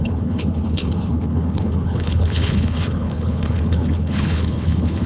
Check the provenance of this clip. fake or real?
fake